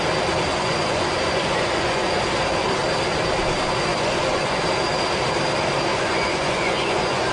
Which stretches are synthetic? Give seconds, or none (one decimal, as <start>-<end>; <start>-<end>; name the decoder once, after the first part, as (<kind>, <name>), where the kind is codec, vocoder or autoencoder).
0.5-2.2 (vocoder, Vocos); 3.9-4.6; 5.9-7.3